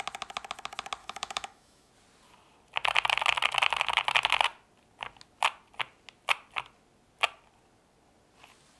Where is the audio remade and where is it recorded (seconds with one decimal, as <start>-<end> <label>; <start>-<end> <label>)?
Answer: 0.0-1.0 recorded; 1.0-1.9 remade; 1.9-8.8 recorded

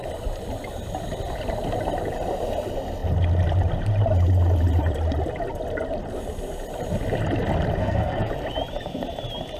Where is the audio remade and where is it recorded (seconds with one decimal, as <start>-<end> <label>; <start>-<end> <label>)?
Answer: 0.0-7.8 recorded; 7.8-8.3 remade; 8.3-9.6 recorded